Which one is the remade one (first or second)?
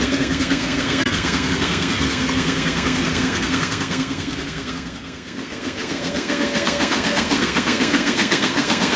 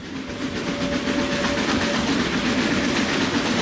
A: first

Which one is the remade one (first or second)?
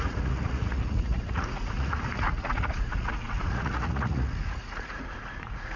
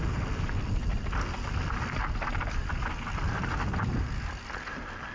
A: first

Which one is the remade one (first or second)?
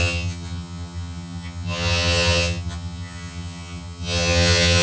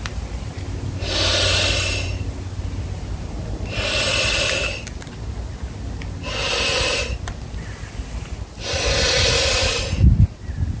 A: first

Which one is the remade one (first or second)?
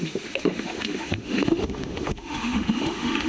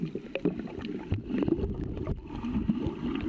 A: first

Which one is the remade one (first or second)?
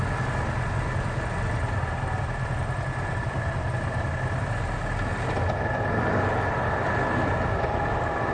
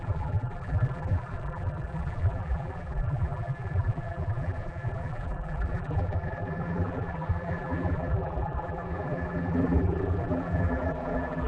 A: second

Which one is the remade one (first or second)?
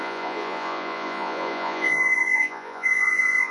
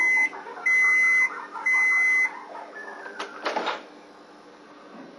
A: first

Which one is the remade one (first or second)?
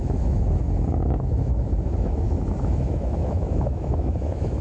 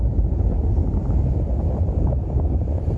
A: first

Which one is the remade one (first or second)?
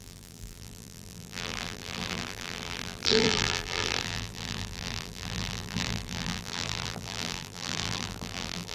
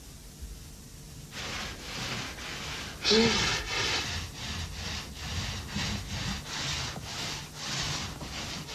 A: first